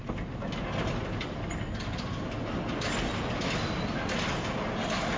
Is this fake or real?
real